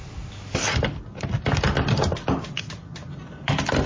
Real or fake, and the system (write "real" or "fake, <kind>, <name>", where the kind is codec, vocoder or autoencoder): real